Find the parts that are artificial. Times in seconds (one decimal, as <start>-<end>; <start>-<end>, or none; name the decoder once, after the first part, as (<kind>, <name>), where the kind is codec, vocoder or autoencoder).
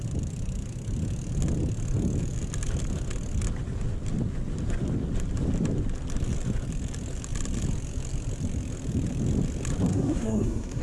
9.9-10.8 (codec, SNAC)